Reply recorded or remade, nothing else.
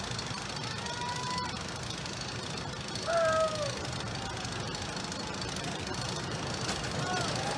recorded